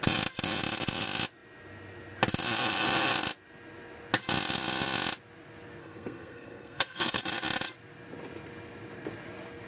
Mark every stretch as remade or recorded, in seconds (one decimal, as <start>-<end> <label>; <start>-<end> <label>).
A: 0.0-5.8 recorded; 5.8-7.2 remade; 7.2-9.7 recorded